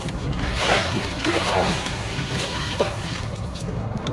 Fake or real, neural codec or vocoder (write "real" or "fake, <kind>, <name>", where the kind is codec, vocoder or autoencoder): fake, codec, SNAC